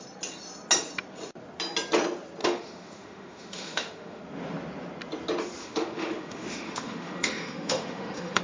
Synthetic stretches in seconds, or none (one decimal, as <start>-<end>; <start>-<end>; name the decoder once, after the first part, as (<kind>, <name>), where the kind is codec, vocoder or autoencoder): 2.4-4.2 (autoencoder, DAC-VAE); 5.6-8.4